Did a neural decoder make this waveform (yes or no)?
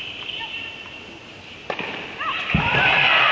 yes